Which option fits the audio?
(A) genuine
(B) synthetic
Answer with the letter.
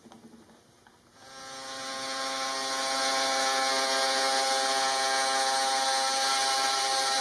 A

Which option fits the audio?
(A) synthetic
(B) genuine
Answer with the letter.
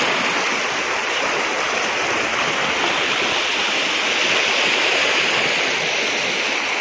B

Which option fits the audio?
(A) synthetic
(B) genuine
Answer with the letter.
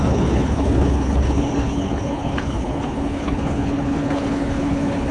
A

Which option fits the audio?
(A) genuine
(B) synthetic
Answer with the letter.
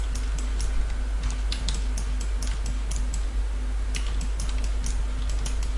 A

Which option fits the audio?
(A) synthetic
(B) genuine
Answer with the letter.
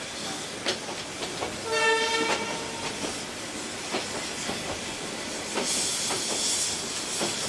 B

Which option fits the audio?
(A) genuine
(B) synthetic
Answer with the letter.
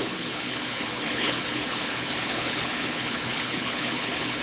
B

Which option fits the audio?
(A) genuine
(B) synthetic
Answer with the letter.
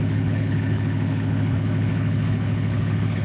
B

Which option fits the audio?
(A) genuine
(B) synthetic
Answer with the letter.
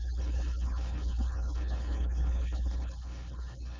B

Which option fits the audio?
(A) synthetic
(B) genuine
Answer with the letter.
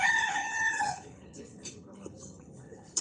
A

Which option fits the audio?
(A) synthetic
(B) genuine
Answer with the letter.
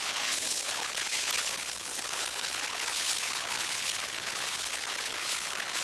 A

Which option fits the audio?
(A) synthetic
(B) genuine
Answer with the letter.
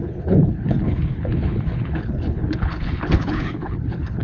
A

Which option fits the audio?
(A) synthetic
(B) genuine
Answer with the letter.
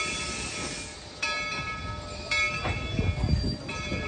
B